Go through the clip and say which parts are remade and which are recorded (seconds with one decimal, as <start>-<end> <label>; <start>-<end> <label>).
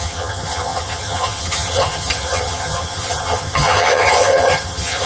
0.0-5.1 remade